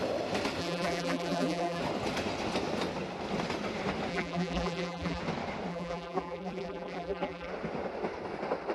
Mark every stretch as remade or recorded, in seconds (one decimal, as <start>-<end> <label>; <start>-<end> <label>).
0.0-0.6 recorded; 0.6-1.8 remade; 1.8-4.1 recorded; 4.1-5.2 remade; 5.2-5.7 recorded; 5.7-7.5 remade; 7.5-8.7 recorded